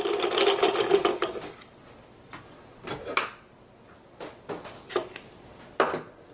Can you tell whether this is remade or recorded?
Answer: recorded